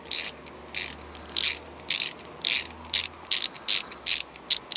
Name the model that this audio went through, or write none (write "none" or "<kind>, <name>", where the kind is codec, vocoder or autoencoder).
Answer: none